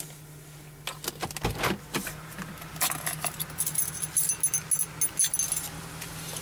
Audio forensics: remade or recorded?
recorded